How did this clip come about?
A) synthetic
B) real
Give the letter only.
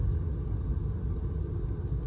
B